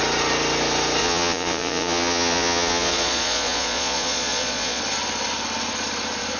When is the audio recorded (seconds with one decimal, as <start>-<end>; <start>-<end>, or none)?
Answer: 0.0-1.0; 4.8-6.4